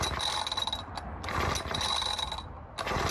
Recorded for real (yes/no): yes